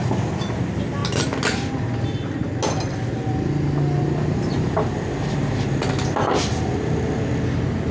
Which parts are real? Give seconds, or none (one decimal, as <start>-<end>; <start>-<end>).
0.0-7.9